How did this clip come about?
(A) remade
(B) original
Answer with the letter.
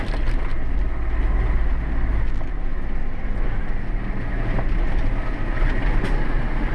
B